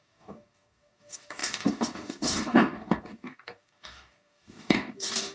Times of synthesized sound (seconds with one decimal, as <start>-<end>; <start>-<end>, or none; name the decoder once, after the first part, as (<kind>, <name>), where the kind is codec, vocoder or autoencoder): 0.0-5.3 (codec, DAC)